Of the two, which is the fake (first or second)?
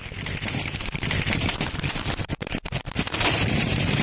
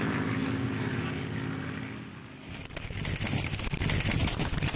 first